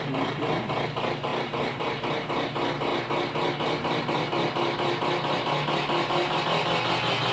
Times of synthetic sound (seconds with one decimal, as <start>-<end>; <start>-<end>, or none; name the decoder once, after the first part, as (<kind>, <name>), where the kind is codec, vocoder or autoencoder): 1.3-1.9 (vocoder, BigVGAN v2)